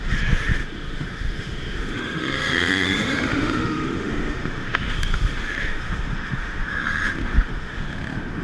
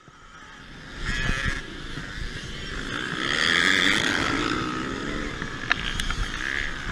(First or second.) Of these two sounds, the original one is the second